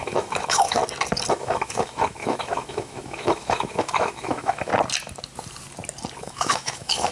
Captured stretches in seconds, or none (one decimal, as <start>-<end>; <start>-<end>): 0.8-1.3; 4.7-6.2